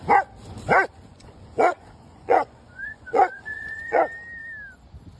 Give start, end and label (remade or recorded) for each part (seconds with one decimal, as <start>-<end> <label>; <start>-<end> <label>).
0.0-0.9 recorded; 0.9-4.0 remade; 4.0-5.2 recorded